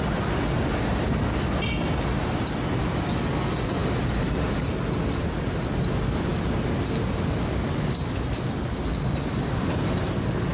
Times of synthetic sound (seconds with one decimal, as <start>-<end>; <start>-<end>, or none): none